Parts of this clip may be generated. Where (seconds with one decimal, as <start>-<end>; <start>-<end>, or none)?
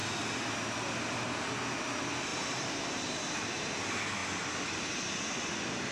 2.3-3.8